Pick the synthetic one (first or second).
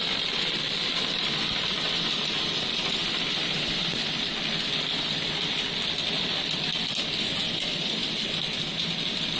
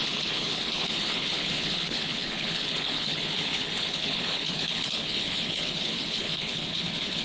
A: second